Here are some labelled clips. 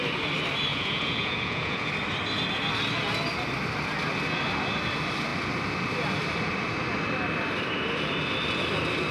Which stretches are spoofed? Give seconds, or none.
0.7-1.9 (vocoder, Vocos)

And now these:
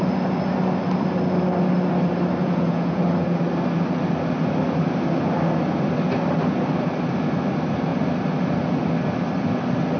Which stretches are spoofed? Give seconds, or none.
2.4-3.0 (vocoder, Vocos)

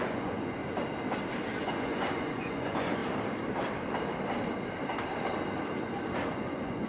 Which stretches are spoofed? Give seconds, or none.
0.0-0.6 (vocoder, Vocos); 1.6-3.0; 6.3-6.9